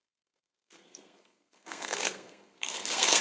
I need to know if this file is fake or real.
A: fake